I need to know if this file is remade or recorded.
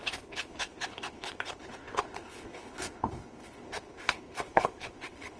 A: remade